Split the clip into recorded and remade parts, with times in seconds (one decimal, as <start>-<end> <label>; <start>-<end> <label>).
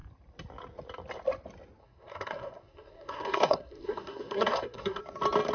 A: 0.0-1.8 recorded; 1.8-5.0 remade; 5.0-5.5 recorded